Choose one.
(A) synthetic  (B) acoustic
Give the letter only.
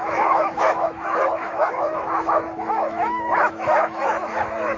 A